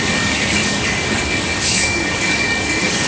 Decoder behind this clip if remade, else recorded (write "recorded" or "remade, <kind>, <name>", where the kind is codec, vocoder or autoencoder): remade, codec, DAC